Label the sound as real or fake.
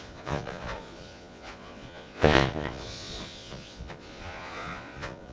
fake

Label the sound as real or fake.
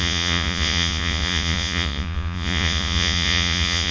fake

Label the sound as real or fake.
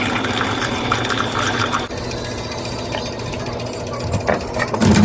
real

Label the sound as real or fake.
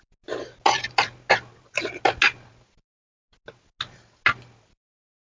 real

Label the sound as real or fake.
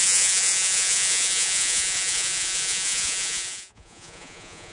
fake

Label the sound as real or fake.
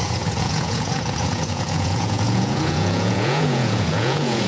fake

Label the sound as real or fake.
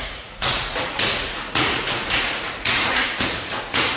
fake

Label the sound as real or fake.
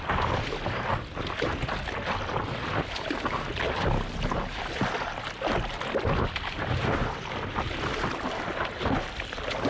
real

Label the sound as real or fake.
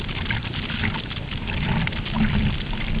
real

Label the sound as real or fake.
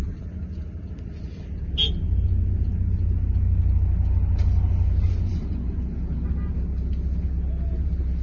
real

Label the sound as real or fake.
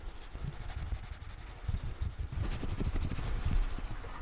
real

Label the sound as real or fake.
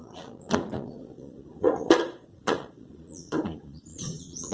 fake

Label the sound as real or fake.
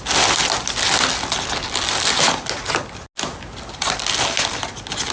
real